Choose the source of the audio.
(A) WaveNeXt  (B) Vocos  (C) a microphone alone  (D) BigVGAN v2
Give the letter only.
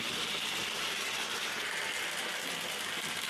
C